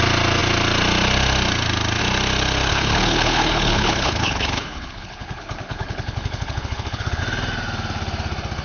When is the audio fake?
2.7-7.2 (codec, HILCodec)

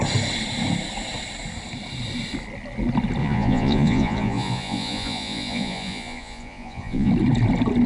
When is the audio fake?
3.2-7.1 (vocoder, Vocos)

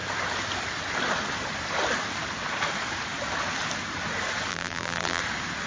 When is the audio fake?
4.5-5.2 (vocoder, BigVGAN v2)